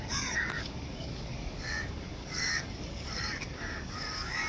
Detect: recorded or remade remade